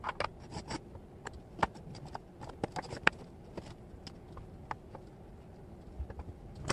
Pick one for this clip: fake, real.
real